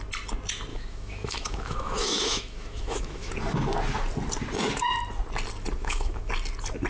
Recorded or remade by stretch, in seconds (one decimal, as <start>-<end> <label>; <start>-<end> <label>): 0.0-0.7 recorded; 0.7-3.3 remade; 3.3-5.8 recorded; 5.8-6.3 remade; 6.3-6.9 recorded